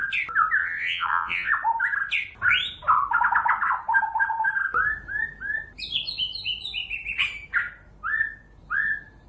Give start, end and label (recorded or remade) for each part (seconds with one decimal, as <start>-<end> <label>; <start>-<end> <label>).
0.0-0.6 recorded; 0.6-1.5 remade; 1.5-9.3 recorded